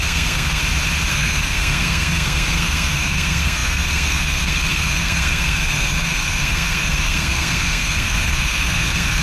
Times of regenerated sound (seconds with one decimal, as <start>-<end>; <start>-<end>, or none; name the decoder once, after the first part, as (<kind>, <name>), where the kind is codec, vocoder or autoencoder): 0.0-0.6 (codec, SNAC); 1.1-9.2